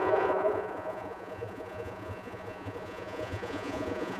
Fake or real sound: fake